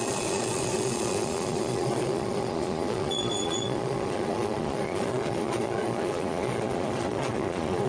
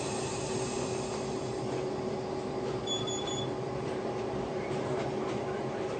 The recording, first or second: second